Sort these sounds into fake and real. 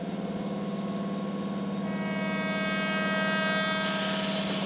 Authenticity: real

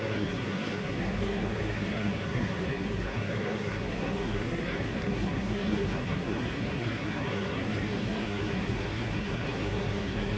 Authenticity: fake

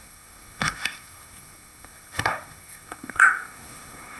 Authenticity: fake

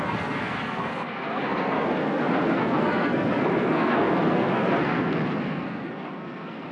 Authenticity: fake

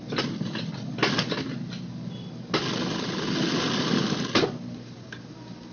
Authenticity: real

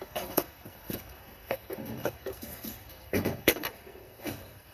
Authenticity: fake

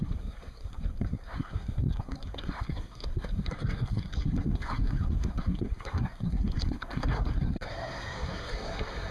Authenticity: fake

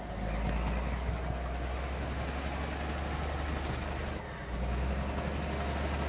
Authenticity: real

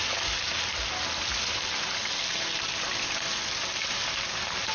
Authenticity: real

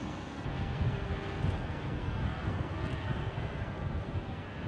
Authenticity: fake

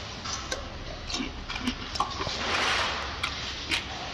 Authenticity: real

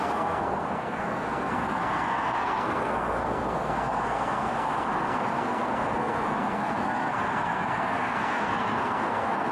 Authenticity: fake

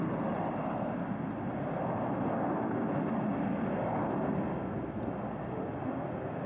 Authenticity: real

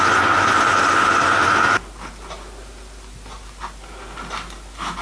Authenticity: real